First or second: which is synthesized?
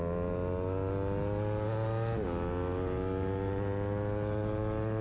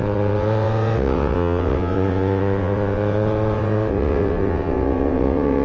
second